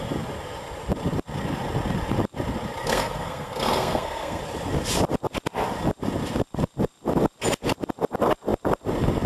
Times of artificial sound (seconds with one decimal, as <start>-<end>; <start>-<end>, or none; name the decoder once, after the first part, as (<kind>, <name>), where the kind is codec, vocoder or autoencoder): 2.8-4.4 (codec, SNAC)